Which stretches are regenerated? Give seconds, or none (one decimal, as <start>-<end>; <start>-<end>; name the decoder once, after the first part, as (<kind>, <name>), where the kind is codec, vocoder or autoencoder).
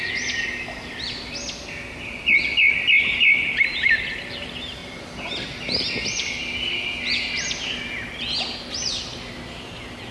none